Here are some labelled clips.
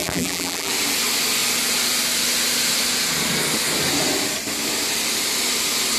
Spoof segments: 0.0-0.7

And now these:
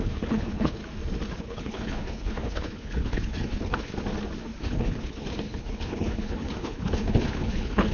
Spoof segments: 0.0-0.8; 1.4-3.9; 4.6-7.9

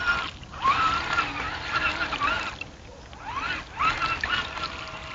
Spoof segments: 0.5-2.5

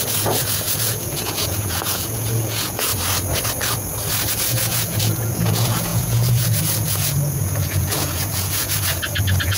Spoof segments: 0.0-2.9; 4.3-9.6